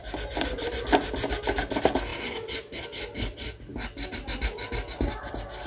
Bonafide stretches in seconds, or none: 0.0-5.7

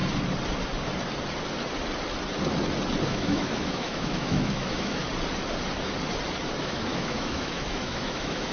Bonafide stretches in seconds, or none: 0.0-3.1; 5.0-6.6

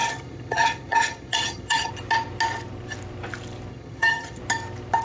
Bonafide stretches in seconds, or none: 1.9-3.7; 4.4-5.0

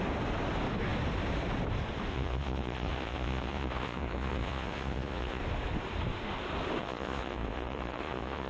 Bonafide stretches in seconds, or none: 0.0-2.1; 5.4-6.8

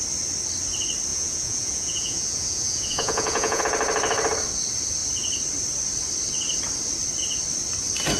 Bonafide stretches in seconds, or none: 0.0-1.1; 3.6-8.2

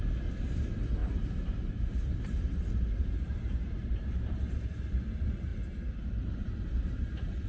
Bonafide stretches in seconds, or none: 0.0-1.0; 4.9-7.5

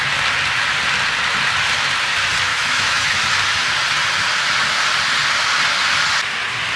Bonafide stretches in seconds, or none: 0.0-2.5; 3.2-6.8

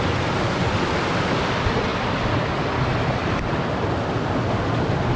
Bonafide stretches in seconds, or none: 0.0-5.2